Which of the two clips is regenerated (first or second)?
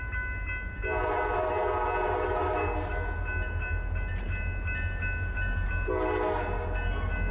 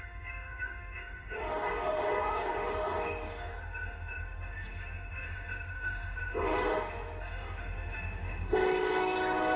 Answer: second